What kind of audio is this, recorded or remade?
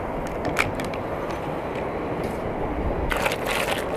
recorded